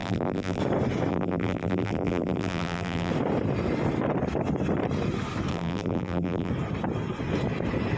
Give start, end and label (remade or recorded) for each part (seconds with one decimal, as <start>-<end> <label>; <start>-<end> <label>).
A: 0.0-0.6 remade; 0.6-1.1 recorded; 1.1-3.1 remade; 3.1-5.5 recorded; 5.5-6.5 remade; 6.5-8.0 recorded